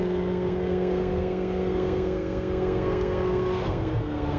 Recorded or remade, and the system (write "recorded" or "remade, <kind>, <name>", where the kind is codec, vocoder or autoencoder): remade, codec, SNAC